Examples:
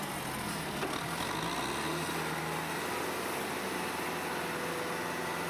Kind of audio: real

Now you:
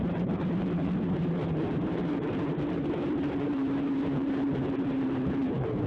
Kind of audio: fake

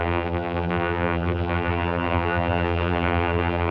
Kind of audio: fake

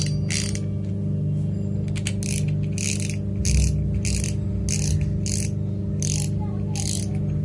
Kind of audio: real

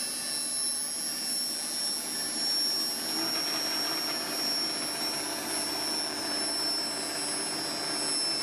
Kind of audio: real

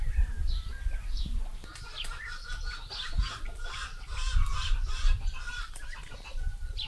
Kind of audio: fake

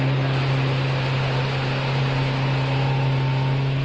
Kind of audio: real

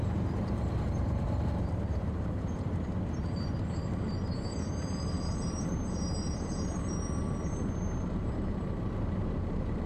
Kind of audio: fake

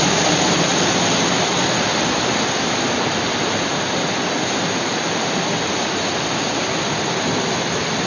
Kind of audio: real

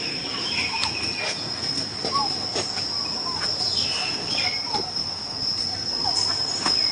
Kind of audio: real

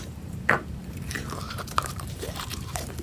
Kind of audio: fake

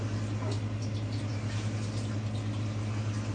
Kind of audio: real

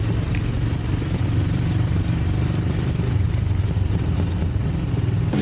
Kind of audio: fake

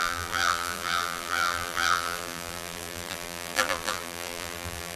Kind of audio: fake